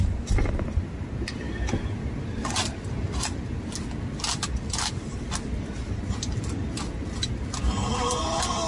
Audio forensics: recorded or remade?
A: recorded